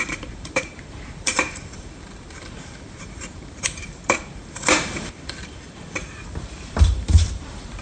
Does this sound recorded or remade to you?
remade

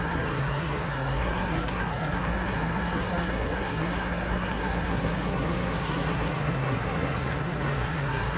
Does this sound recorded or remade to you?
remade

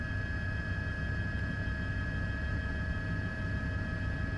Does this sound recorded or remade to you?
recorded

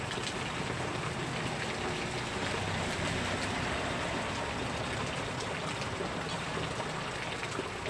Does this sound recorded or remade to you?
recorded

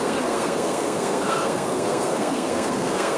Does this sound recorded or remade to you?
remade